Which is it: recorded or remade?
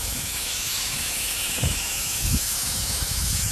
remade